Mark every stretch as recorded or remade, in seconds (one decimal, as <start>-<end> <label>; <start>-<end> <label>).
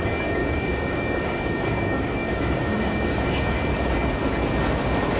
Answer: 0.0-0.4 recorded; 0.4-3.5 remade; 3.5-5.2 recorded